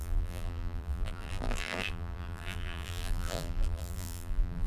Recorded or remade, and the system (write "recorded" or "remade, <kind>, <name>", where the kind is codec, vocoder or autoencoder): remade, vocoder, BigVGAN v2